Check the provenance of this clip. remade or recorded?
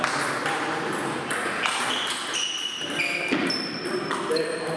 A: recorded